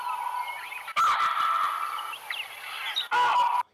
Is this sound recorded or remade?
recorded